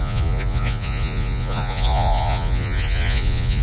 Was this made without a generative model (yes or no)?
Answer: no